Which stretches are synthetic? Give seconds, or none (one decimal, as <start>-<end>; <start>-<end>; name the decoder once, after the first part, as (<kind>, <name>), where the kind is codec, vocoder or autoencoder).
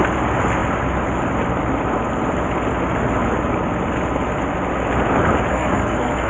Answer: 5.5-6.3 (codec, SNAC)